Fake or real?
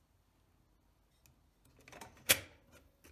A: real